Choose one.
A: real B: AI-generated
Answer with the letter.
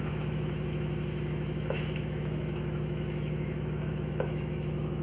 B